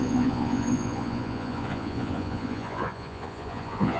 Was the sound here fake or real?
fake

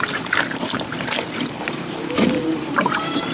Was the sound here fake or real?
fake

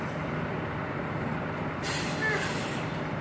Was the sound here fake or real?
real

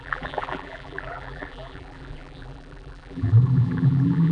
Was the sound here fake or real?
fake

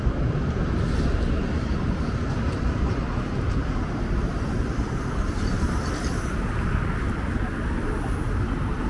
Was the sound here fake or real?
real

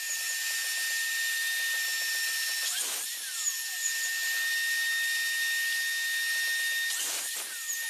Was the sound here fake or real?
real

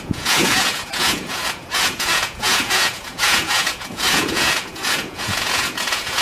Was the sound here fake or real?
fake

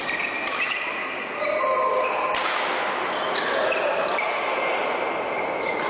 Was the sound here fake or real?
real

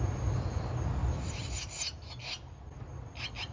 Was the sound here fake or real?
real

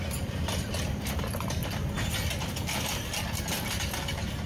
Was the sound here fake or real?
fake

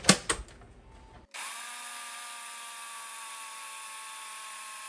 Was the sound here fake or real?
real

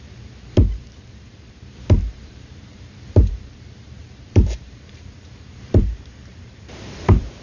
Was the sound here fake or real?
fake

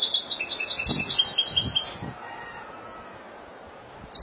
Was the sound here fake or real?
real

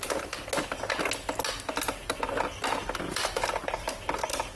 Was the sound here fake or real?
real